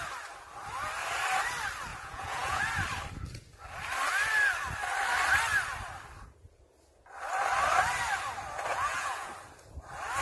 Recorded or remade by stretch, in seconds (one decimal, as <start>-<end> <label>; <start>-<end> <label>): 0.0-1.9 recorded; 1.9-2.6 remade; 2.6-8.7 recorded; 8.7-9.3 remade; 9.3-10.2 recorded